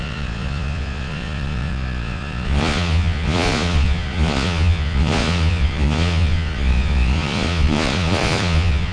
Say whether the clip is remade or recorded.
remade